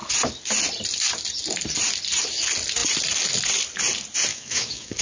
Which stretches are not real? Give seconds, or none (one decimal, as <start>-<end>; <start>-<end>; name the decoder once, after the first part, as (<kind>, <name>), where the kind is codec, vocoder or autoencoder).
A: 4.3-5.0 (autoencoder, DAC-VAE)